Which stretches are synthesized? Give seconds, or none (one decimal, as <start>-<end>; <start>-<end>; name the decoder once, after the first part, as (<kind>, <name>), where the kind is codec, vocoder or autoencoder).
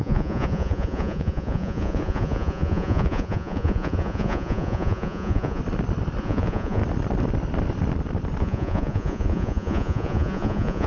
0.0-5.6 (vocoder, Vocos); 6.2-6.8; 8.4-10.9